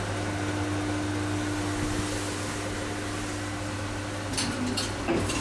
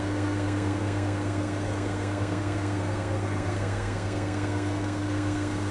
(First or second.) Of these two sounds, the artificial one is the second